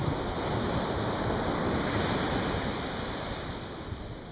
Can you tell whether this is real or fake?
real